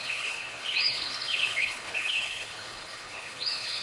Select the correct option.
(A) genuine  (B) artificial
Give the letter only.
B